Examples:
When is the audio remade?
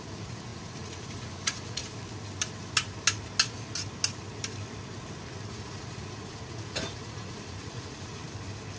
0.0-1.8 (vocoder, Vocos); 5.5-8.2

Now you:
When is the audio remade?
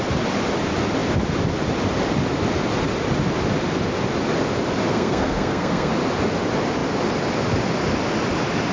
4.9-5.9 (codec, SNAC)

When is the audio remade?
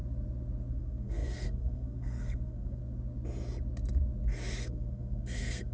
0.7-2.8 (codec, SNAC); 4.6-5.7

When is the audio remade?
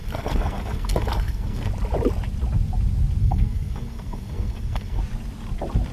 0.0-1.7 (codec, SNAC); 3.2-5.0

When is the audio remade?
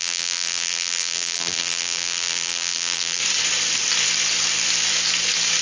0.0-3.2 (vocoder, BigVGAN v2)